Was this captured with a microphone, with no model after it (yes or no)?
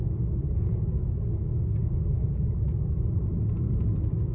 no